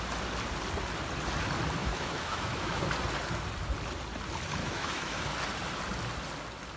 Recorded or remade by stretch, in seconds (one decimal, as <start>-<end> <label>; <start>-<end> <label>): 0.0-1.8 recorded; 1.8-2.8 remade; 2.8-4.6 recorded; 4.6-5.3 remade; 5.3-6.8 recorded